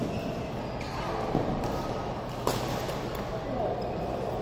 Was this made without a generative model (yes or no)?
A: yes